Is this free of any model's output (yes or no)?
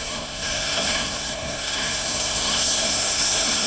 no